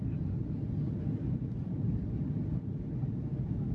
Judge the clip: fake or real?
real